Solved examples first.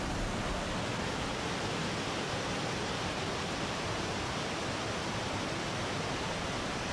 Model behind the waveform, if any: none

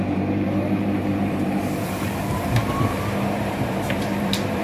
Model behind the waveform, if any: vocoder, BigVGAN v2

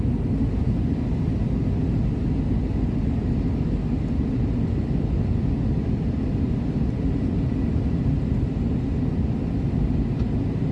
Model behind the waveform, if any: none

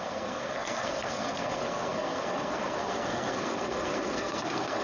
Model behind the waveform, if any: codec, SNAC